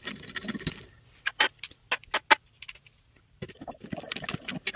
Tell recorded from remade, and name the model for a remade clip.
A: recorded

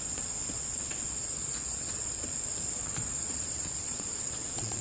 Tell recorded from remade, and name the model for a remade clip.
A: remade, vocoder, Vocos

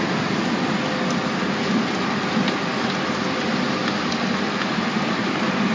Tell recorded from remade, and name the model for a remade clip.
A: recorded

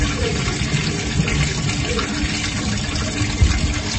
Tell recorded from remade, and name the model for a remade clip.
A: recorded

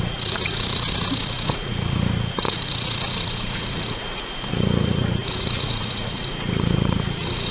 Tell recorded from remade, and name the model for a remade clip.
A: remade, vocoder, Vocos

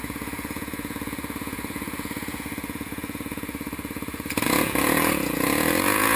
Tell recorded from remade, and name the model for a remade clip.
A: remade, vocoder, Vocos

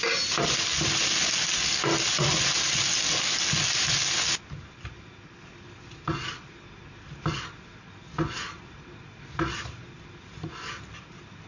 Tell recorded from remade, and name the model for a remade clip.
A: recorded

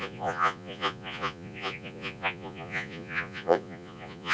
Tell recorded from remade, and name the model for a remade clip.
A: remade, vocoder, Vocos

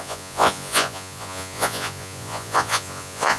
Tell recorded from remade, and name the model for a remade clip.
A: remade, vocoder, Vocos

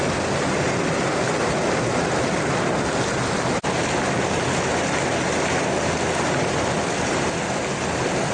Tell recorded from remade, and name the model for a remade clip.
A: recorded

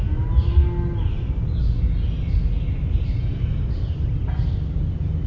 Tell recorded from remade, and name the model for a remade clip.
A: recorded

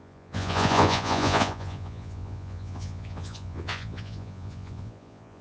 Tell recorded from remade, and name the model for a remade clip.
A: remade, vocoder, Vocos